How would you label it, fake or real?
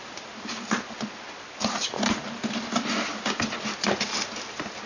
real